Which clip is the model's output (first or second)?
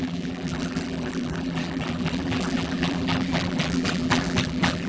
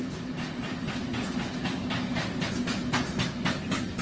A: first